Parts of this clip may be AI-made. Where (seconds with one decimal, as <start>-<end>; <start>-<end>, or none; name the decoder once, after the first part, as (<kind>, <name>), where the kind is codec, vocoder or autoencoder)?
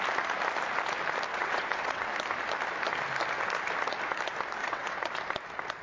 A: 1.3-2.1 (vocoder, WaveNeXt); 4.6-5.1